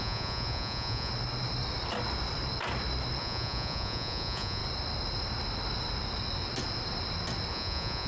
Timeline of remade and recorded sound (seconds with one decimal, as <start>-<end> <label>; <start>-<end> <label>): 0.0-1.1 remade; 1.1-3.2 recorded; 3.2-4.6 remade; 4.6-7.5 recorded; 7.5-8.1 remade